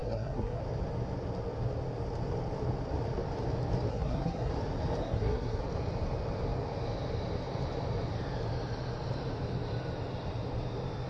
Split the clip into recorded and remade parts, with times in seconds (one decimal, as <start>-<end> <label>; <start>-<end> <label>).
0.0-0.6 remade; 0.6-3.9 recorded; 3.9-4.5 remade; 4.5-5.0 recorded; 5.0-5.6 remade; 5.6-11.1 recorded